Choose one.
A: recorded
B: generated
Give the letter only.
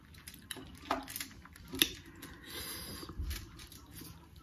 A